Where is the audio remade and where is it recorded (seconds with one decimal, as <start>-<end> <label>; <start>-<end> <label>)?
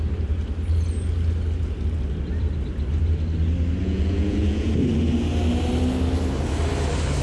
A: 0.0-3.8 recorded; 3.8-4.7 remade; 4.7-7.2 recorded